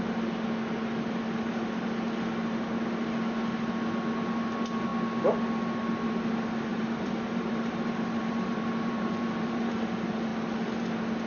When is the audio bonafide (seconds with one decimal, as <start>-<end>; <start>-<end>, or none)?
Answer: 0.0-6.7; 9.7-11.3